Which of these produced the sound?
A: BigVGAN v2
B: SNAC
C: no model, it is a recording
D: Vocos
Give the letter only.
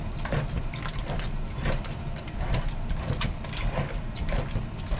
A